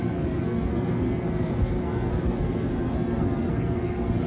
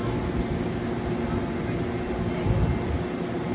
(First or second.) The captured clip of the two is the second